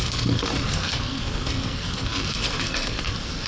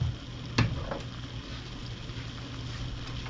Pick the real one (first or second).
second